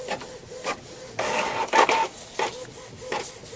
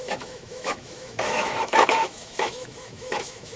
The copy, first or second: second